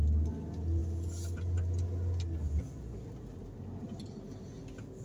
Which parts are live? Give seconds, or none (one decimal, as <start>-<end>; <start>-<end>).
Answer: 0.0-5.0